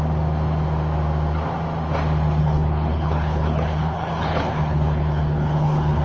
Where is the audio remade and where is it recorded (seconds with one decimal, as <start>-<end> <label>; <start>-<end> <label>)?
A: 0.0-2.4 recorded; 2.4-6.0 remade